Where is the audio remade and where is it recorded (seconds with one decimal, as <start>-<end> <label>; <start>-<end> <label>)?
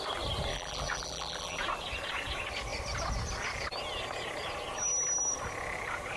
0.0-0.5 recorded; 0.5-1.6 remade; 1.6-6.2 recorded